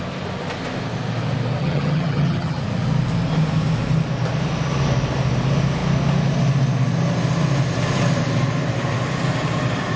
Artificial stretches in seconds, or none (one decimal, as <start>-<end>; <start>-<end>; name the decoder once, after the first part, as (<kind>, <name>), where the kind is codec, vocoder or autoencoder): 1.6-2.6 (vocoder, HiFi-GAN)